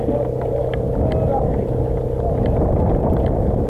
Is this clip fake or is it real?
real